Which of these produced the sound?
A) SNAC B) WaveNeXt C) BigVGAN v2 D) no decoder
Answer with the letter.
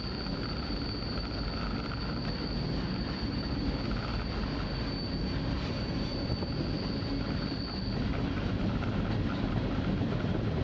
D